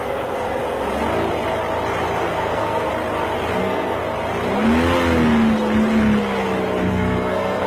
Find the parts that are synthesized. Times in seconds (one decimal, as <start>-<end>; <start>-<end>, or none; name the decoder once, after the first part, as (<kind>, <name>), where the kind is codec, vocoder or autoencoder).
0.0-0.6 (codec, SNAC); 2.2-2.9; 3.6-4.0; 6.9-7.7